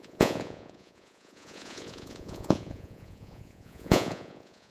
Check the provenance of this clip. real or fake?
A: fake